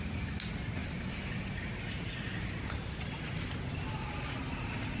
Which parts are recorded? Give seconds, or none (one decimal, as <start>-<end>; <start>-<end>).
0.0-5.0